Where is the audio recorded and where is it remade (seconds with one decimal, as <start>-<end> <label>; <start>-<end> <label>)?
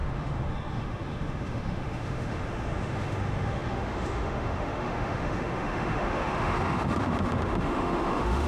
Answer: 0.0-8.5 remade